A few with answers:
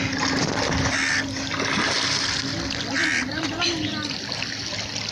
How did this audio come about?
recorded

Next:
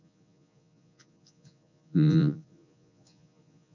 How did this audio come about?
remade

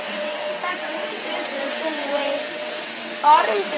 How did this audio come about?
remade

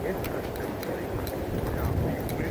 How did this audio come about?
recorded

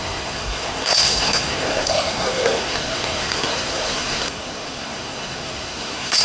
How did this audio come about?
remade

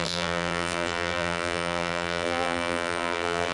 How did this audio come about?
remade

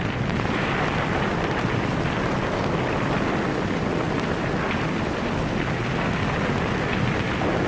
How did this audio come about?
remade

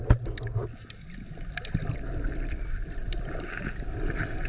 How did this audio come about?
recorded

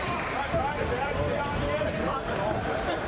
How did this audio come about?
recorded